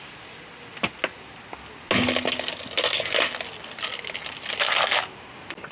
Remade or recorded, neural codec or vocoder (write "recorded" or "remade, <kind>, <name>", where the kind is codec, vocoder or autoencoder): recorded